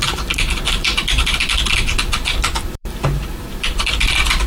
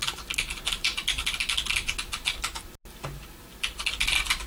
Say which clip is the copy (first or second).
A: first